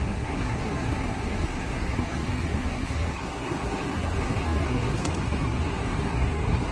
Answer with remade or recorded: remade